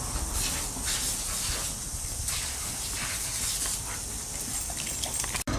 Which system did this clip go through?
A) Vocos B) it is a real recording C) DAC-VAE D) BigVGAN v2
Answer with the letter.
B